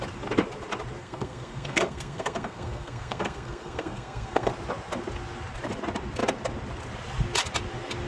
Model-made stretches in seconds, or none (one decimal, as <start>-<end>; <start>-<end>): 1.0-4.5